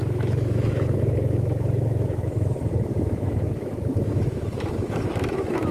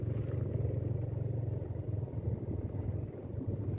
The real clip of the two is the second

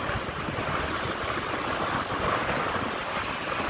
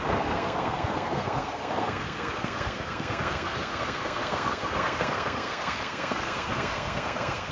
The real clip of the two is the first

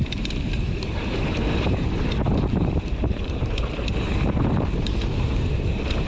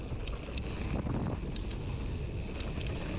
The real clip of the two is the second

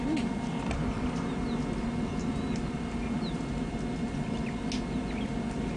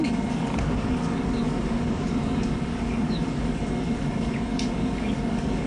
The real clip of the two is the first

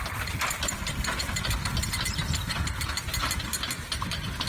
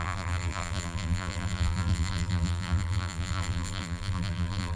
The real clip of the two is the first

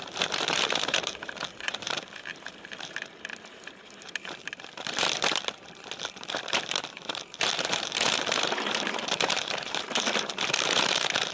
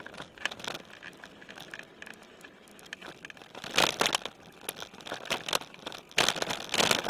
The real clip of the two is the second